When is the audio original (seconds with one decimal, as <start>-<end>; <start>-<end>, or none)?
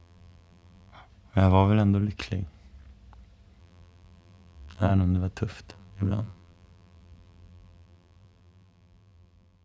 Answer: 0.9-3.6; 4.9-5.7